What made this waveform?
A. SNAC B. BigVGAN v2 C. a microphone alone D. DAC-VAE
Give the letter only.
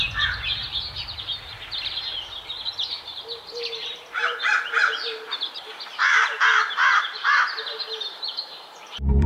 B